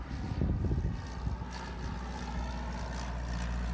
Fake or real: real